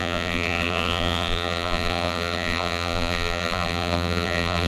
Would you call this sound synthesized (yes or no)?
yes